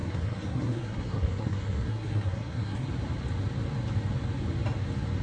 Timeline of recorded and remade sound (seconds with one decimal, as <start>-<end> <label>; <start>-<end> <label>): 0.0-2.9 remade; 2.9-5.2 recorded